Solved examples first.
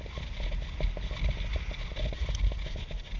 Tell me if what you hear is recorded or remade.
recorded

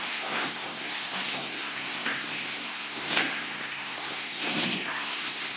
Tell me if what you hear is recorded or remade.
remade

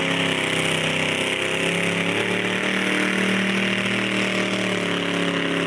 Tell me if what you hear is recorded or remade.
recorded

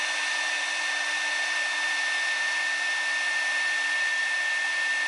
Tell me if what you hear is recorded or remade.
recorded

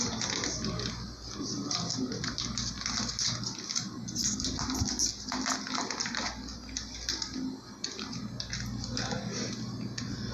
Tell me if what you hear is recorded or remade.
recorded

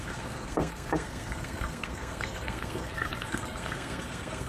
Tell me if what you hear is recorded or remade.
remade